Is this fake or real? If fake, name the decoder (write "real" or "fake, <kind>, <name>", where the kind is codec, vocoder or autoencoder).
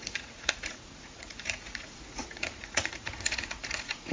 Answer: fake, vocoder, Vocos